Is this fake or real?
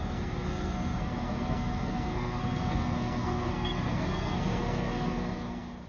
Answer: fake